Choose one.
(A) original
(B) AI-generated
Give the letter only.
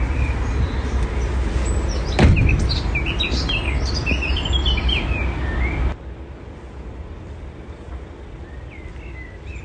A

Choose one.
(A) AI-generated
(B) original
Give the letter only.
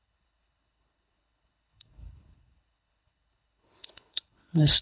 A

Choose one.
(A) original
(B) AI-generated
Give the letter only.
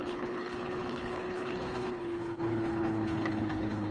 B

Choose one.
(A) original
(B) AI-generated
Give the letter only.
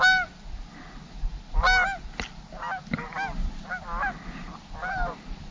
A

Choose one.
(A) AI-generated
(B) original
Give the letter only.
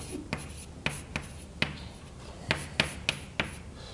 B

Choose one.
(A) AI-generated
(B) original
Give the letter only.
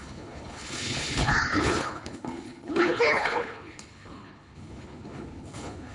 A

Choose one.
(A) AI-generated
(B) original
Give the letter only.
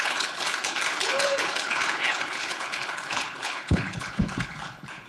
A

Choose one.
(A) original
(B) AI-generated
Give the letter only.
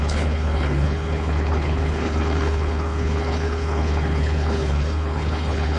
B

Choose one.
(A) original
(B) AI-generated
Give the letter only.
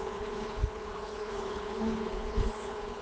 B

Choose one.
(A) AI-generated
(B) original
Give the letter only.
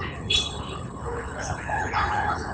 A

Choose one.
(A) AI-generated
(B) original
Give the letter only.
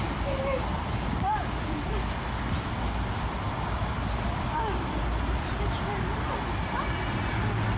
B